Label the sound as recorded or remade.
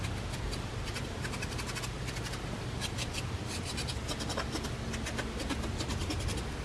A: recorded